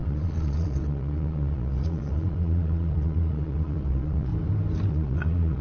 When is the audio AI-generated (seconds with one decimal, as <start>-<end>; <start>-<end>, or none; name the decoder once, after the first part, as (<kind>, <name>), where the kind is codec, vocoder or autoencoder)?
0.0-4.3 (vocoder, Vocos); 4.9-5.6